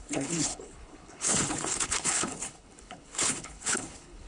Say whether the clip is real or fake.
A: fake